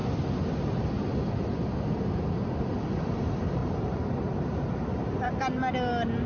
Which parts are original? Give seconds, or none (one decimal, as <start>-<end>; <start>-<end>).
0.0-3.6; 5.7-6.3